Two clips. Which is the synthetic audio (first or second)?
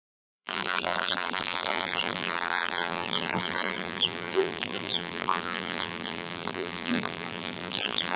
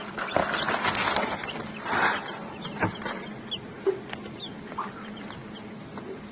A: first